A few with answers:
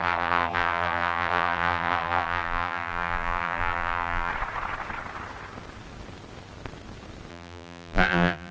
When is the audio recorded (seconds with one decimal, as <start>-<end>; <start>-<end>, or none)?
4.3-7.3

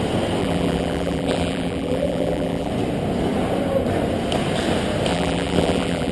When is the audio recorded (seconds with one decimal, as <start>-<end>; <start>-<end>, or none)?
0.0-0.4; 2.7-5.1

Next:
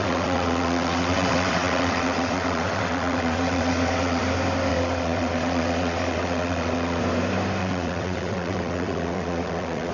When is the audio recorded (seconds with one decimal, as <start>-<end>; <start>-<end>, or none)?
4.2-4.7; 7.0-7.6